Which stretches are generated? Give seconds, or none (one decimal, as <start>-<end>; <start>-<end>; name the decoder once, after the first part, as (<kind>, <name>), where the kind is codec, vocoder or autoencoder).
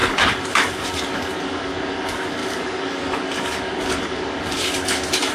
0.0-5.3 (codec, DAC)